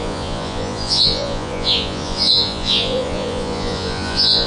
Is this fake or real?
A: fake